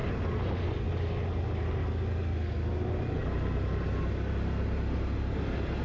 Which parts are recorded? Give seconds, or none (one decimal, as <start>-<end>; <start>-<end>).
0.0-5.8